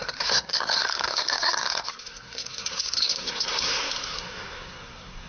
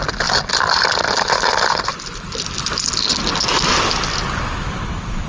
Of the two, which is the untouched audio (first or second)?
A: second